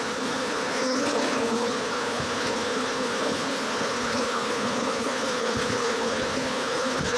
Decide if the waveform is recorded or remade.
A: remade